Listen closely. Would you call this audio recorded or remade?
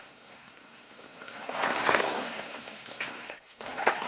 remade